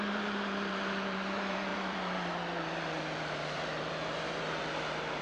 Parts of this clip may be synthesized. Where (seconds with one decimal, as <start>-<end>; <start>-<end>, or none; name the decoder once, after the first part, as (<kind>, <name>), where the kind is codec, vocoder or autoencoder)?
0.0-5.2 (vocoder, BigVGAN v2)